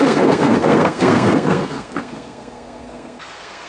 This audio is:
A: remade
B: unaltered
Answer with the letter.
A